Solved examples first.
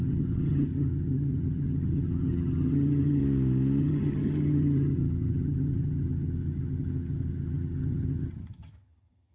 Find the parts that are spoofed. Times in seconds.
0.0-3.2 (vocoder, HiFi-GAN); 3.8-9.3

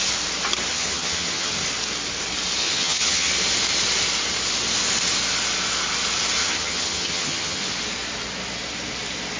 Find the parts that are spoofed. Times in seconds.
0.7-1.5 (vocoder, HiFi-GAN); 2.6-3.3; 6.4-7.7

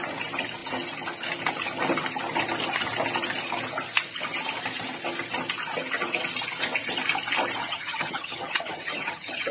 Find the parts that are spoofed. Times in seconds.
7.6-9.5 (vocoder, HiFi-GAN)

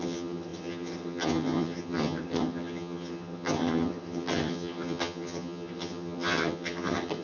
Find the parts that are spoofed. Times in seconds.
0.0-7.2 (vocoder, HiFi-GAN)

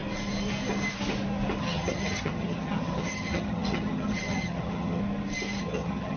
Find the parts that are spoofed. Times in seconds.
1.6-5.0 (vocoder, HiFi-GAN); 5.6-6.2

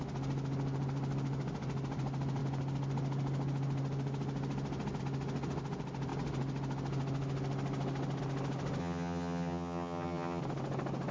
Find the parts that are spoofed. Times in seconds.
8.8-10.4 (vocoder, HiFi-GAN)

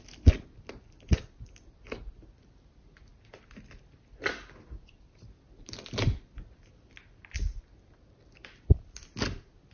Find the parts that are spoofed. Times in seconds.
none